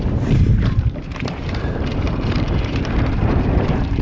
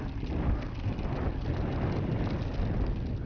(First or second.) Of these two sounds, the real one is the second